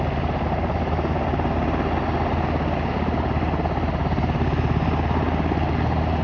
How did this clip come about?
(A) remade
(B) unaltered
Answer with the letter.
B